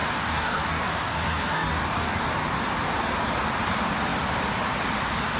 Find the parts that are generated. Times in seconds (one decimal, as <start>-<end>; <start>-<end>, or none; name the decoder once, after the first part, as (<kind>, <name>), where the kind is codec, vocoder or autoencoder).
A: 0.0-2.2 (codec, DAC)

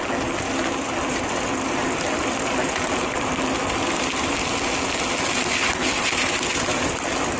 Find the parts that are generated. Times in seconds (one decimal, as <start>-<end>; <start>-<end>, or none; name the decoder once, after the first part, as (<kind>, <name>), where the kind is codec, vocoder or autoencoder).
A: none

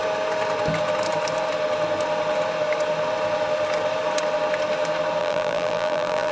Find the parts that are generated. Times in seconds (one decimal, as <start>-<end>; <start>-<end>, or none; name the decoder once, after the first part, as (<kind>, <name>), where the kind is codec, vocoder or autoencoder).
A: 5.2-6.3 (vocoder, BigVGAN v2)

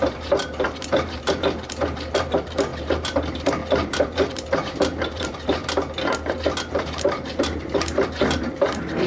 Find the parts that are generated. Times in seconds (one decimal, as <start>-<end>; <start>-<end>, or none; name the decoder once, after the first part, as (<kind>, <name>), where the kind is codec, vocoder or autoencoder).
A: 0.0-5.6 (vocoder, BigVGAN v2); 6.7-9.1